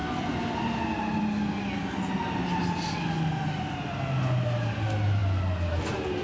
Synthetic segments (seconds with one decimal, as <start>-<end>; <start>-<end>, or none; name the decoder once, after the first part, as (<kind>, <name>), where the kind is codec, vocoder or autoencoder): none